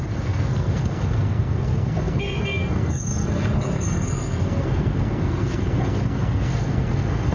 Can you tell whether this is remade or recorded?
remade